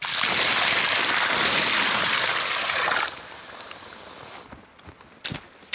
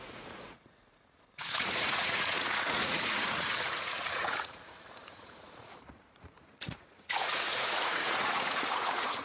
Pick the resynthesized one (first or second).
second